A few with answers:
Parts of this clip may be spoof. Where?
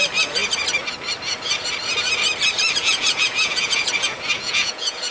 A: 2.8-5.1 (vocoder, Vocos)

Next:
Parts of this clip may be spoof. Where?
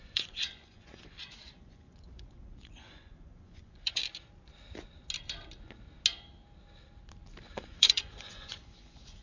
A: 0.0-4.0 (vocoder, Vocos); 7.5-9.2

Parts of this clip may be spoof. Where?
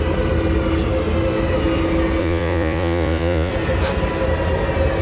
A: 2.2-3.5 (vocoder, Vocos)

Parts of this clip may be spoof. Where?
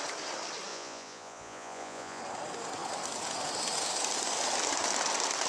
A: 0.7-2.2 (vocoder, Vocos)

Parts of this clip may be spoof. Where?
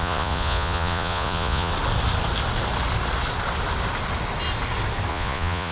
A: 0.0-1.7 (vocoder, Vocos); 5.1-5.7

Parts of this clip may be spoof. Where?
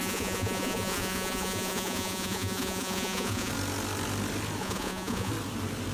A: 0.0-3.5 (vocoder, Vocos); 4.6-5.3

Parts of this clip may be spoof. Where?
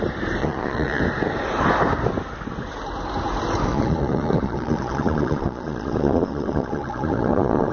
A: 0.4-1.0 (vocoder, Vocos); 3.7-7.7